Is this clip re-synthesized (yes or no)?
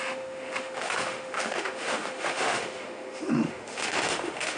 yes